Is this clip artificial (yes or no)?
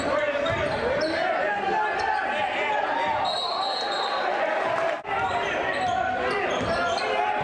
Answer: no